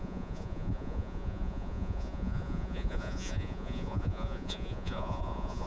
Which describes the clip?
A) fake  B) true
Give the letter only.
A